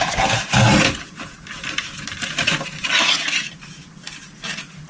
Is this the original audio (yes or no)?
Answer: yes